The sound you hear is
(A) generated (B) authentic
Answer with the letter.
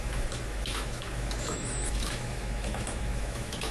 A